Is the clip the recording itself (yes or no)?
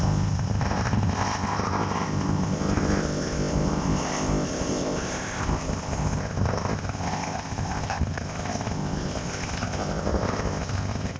no